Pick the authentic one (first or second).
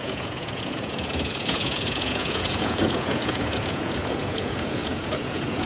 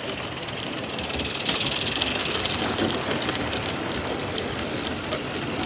second